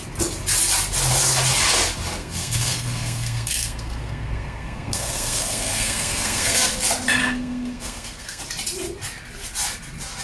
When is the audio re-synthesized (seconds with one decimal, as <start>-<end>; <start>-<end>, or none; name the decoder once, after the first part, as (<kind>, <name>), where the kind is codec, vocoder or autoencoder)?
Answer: 2.2-6.7 (codec, SNAC); 7.2-8.4